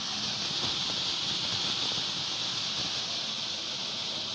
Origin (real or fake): real